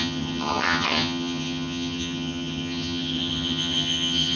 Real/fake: fake